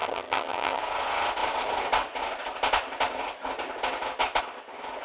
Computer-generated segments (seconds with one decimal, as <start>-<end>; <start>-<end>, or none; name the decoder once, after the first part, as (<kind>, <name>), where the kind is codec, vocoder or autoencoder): 0.0-0.8 (vocoder, HiFi-GAN)